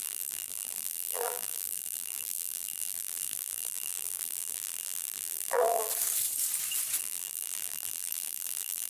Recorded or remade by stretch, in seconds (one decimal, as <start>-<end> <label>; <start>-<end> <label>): 0.0-5.9 remade; 5.9-7.0 recorded; 7.0-8.9 remade

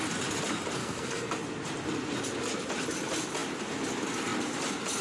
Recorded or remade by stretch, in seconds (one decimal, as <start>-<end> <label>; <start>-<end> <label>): 0.0-0.8 recorded; 0.8-1.3 remade; 1.3-5.0 recorded

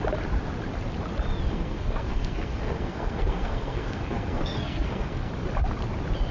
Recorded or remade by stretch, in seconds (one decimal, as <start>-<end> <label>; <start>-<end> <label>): 0.0-1.5 recorded; 1.5-5.3 remade; 5.3-6.3 recorded

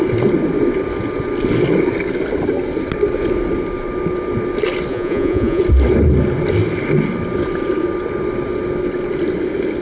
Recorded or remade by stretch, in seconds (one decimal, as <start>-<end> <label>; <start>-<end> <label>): 0.0-4.9 recorded; 4.9-5.6 remade; 5.6-9.8 recorded